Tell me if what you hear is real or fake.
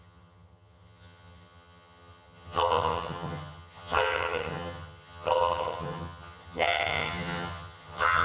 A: fake